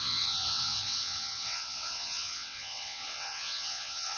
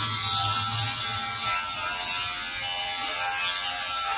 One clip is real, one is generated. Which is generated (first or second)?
first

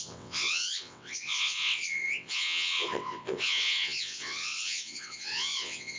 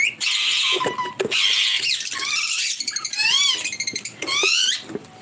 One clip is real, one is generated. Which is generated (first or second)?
first